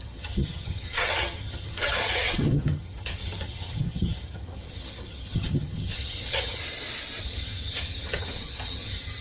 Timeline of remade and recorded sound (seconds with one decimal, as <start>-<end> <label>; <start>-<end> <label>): 0.0-6.6 remade; 6.6-7.2 recorded; 7.2-9.2 remade